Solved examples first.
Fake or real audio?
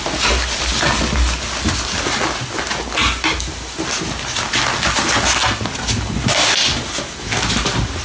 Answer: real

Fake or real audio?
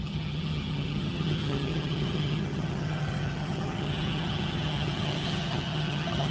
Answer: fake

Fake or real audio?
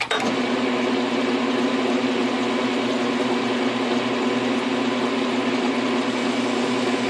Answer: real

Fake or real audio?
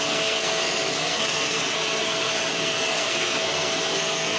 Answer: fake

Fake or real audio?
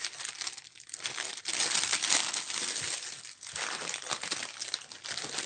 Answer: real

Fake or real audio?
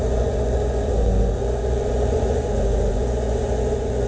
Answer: fake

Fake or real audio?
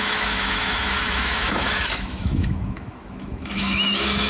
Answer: fake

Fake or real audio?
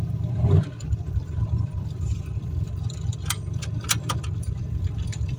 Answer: fake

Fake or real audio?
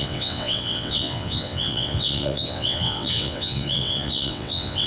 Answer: fake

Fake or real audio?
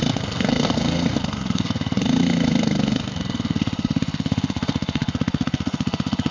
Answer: fake